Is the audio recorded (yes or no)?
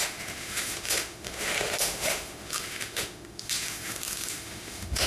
no